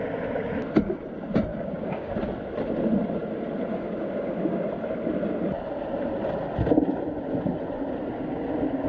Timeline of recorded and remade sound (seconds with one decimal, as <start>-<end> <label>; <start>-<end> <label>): 0.0-1.5 recorded; 1.5-2.1 remade; 2.1-3.7 recorded; 3.7-4.7 remade; 4.7-8.9 recorded